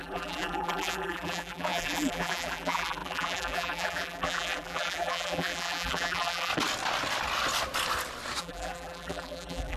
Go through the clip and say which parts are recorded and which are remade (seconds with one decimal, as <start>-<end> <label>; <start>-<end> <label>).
0.0-6.5 remade; 6.5-8.4 recorded; 8.4-9.8 remade